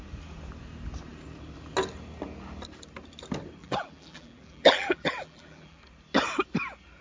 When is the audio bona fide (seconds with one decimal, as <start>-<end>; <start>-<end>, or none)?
0.0-3.6; 5.8-7.0